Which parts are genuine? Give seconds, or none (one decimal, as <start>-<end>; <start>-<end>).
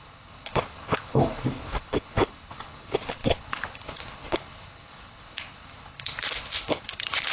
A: none